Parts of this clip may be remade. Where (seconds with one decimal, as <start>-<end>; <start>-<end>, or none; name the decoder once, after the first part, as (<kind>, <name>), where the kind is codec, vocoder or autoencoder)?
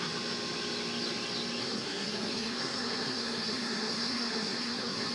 1.6-5.1 (codec, SNAC)